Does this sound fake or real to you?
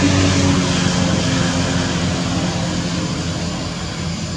real